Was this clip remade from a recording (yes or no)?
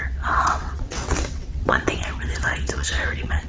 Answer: yes